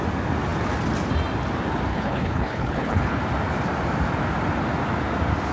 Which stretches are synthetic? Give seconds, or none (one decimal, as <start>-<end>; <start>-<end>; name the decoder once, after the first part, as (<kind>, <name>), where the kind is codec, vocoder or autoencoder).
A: 1.9-3.2 (codec, HILCodec)